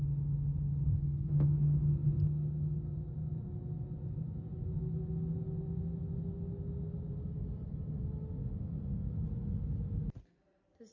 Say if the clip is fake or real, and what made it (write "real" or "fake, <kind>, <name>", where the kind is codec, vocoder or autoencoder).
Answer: real